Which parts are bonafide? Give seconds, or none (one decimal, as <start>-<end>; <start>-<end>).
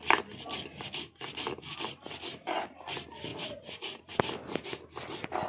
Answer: 0.0-3.3; 4.1-5.5